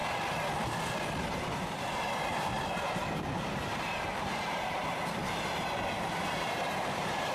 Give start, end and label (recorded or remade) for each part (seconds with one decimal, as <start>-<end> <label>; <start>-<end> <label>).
0.0-1.3 recorded; 1.3-4.8 remade; 4.8-5.5 recorded; 5.5-7.3 remade